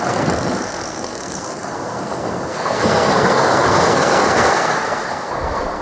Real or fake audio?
fake